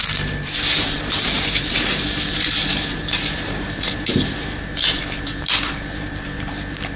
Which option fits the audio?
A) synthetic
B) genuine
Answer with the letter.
A